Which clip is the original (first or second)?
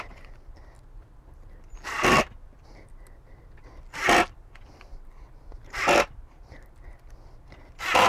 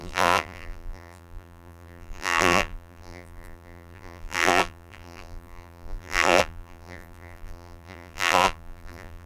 first